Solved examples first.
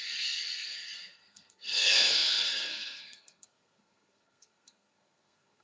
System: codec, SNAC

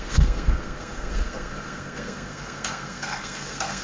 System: codec, SNAC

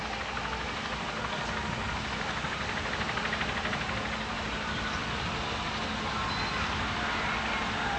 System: none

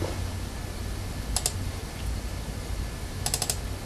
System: none